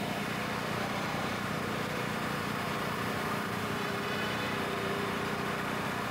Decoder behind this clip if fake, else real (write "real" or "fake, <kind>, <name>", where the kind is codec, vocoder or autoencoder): fake, vocoder, BigVGAN v2